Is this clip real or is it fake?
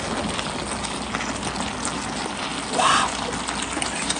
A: real